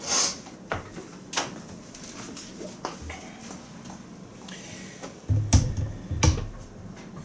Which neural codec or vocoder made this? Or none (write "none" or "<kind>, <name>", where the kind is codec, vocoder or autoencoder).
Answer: none